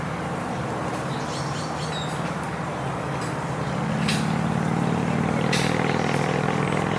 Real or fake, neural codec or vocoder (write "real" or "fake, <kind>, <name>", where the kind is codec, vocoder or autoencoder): real